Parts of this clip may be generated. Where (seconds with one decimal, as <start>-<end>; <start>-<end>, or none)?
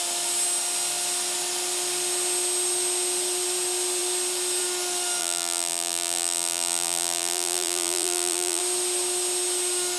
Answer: 5.2-8.6